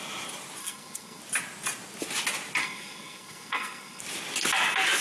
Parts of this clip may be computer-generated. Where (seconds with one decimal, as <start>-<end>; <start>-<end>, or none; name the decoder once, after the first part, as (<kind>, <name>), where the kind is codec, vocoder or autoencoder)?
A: 0.6-1.2 (codec, SNAC); 2.6-4.0